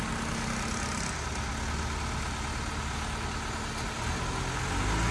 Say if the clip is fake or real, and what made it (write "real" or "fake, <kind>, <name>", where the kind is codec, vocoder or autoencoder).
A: real